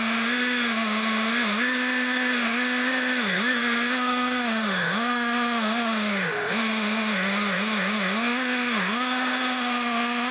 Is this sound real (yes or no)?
no